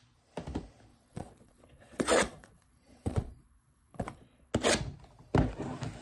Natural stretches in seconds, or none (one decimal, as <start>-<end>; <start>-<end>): 0.0-0.9; 4.5-6.0